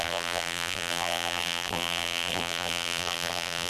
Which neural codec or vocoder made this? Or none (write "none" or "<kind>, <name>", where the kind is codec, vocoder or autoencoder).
vocoder, BigVGAN v2